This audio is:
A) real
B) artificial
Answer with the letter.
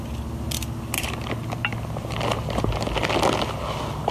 A